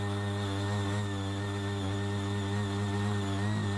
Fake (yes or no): no